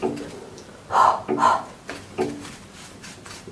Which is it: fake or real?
real